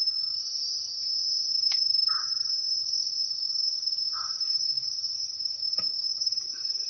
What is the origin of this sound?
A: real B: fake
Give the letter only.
B